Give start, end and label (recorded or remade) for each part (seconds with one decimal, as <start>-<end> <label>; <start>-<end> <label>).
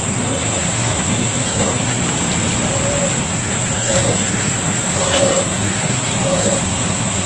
0.0-2.0 remade; 2.0-3.2 recorded; 3.2-7.3 remade